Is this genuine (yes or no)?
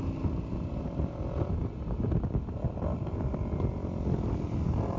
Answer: yes